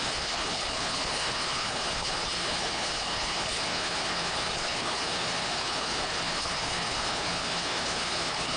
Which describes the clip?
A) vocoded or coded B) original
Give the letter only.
A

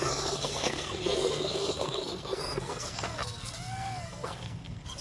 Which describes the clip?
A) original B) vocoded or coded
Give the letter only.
B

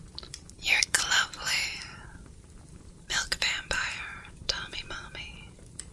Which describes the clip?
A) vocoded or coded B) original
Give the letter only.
A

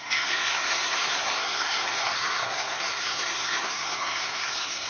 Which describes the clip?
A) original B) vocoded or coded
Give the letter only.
B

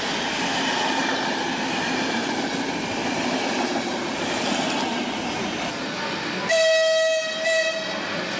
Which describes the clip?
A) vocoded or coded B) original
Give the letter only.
B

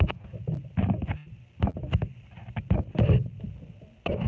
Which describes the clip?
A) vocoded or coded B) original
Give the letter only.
A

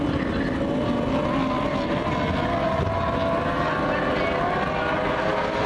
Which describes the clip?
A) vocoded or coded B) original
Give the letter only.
B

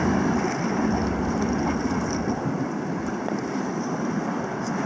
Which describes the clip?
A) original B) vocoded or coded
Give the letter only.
A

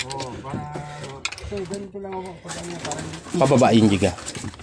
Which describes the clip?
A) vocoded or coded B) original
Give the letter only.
B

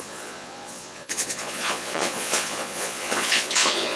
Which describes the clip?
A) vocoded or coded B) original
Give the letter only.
A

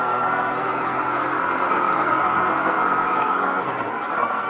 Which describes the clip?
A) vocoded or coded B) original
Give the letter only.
A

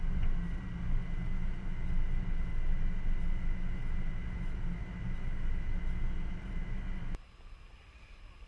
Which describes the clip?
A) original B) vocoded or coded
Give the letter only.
A